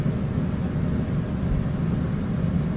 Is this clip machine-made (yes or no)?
no